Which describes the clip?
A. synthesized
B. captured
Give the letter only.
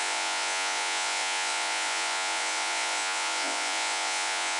A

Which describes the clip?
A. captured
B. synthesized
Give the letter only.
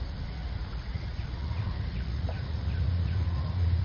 B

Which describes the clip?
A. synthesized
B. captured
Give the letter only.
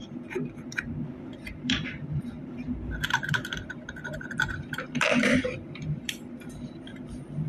A